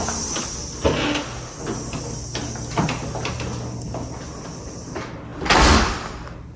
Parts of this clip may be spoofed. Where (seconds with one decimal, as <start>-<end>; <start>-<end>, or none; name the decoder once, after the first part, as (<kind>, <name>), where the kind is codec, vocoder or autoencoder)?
none